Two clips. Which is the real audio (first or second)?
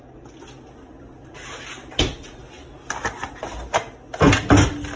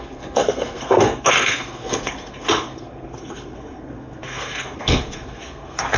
first